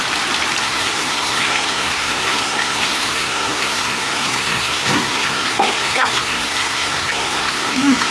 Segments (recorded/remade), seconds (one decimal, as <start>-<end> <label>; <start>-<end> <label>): 0.0-0.6 recorded; 0.6-8.1 remade